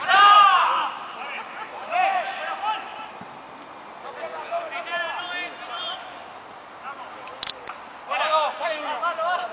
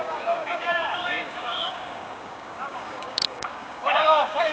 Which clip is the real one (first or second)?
first